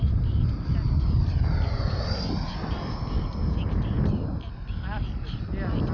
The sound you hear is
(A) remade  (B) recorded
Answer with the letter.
B